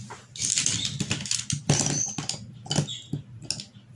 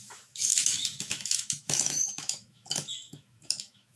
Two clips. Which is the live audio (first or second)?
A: first